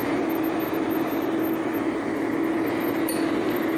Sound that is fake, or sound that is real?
real